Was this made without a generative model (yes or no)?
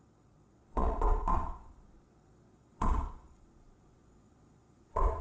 no